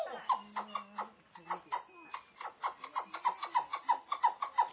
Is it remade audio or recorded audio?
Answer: recorded